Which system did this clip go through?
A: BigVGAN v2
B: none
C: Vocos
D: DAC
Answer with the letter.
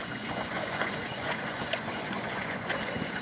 C